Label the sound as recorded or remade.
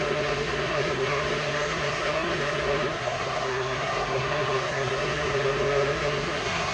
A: remade